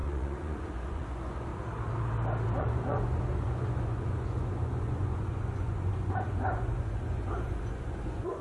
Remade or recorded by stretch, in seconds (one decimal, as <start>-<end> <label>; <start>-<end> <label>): 0.0-1.5 remade; 1.5-2.6 recorded; 2.6-8.4 remade